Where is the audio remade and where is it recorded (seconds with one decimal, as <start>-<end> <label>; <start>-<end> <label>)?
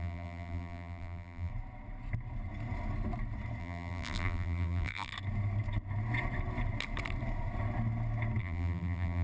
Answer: 0.0-1.5 remade; 1.5-3.6 recorded; 3.6-5.1 remade; 5.1-8.4 recorded; 8.4-9.2 remade